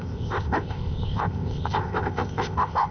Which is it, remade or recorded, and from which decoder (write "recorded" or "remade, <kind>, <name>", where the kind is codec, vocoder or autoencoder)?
remade, codec, ZipCodec